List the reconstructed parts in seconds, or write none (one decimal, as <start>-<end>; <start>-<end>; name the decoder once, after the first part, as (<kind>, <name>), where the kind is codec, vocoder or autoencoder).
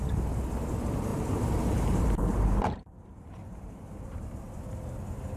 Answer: 1.1-4.3 (vocoder, BigVGAN v2)